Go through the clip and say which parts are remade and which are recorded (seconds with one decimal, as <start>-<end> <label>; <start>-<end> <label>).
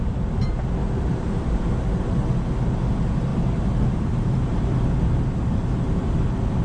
0.0-0.8 recorded; 0.8-1.6 remade; 1.6-3.3 recorded; 3.3-4.7 remade; 4.7-6.6 recorded